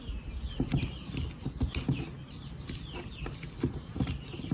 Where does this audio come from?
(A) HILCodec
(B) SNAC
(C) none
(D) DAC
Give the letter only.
C